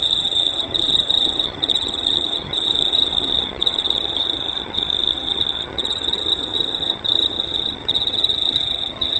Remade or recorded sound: remade